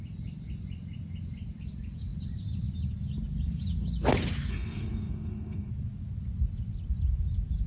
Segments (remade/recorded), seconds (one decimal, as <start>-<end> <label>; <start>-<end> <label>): 0.0-4.5 recorded; 4.5-5.7 remade; 5.7-7.7 recorded